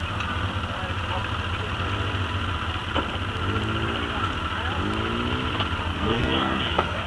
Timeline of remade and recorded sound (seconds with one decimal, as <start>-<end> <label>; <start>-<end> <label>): 0.0-5.9 recorded; 5.9-7.1 remade